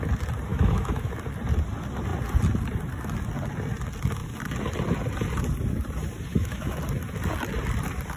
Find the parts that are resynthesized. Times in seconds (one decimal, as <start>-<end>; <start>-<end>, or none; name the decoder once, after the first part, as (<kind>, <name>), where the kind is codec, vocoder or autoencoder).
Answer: 0.5-1.2 (autoencoder, DAC-VAE); 6.3-6.8